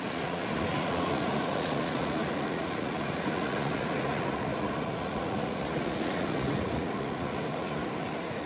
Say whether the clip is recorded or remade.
remade